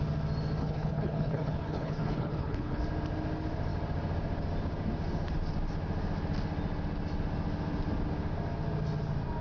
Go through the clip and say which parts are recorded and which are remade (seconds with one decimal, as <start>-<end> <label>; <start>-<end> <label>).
0.0-0.6 recorded; 0.6-2.8 remade; 2.8-9.4 recorded